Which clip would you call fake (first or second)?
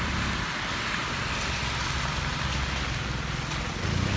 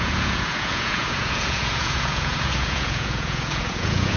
second